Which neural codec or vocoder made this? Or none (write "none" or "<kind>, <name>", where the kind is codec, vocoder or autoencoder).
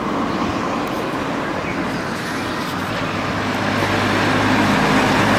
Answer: none